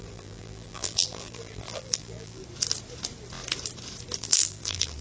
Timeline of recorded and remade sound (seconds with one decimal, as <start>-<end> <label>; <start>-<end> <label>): 0.0-2.4 remade; 2.4-4.2 recorded; 4.2-5.0 remade